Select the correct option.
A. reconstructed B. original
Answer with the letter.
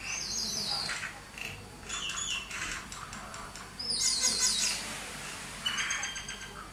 A